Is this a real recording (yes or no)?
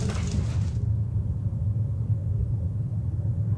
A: yes